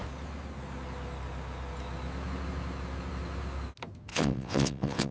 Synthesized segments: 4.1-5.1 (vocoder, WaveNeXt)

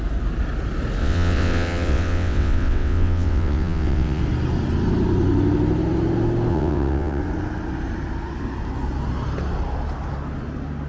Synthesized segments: 1.0-4.2 (vocoder, WaveNeXt); 6.5-7.2

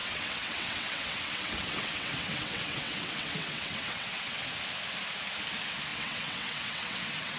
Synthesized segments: 0.0-4.4 (vocoder, WaveNeXt); 5.9-7.4

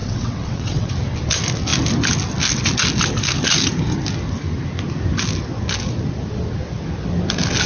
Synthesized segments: 0.0-0.9 (vocoder, WaveNeXt)

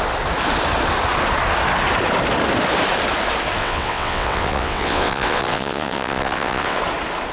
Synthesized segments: 3.6-6.8 (vocoder, WaveNeXt)

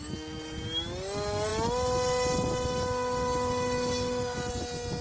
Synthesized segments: none

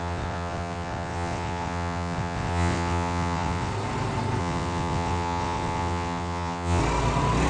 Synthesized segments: 0.0-3.7 (vocoder, WaveNeXt); 4.4-6.8